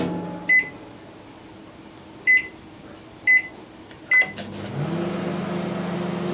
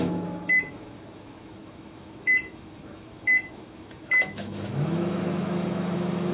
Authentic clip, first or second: first